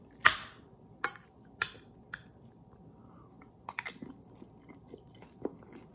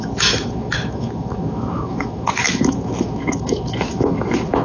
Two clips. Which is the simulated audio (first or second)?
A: second